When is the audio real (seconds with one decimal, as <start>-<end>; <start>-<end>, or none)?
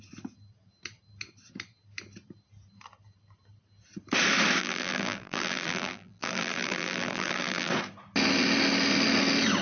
0.0-4.6; 7.7-9.6